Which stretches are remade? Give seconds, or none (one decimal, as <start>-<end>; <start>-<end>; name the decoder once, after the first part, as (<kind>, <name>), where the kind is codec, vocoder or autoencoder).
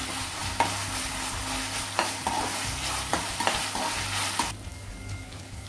4.7-5.7 (codec, DAC)